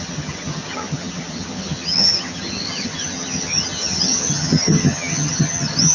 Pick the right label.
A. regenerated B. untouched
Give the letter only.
A